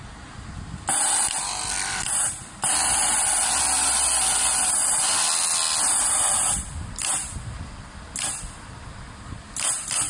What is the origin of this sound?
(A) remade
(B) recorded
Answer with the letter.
B